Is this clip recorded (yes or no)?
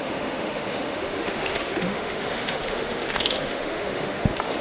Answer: no